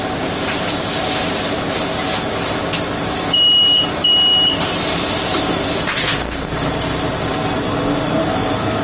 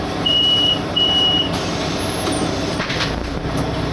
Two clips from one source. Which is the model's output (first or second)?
second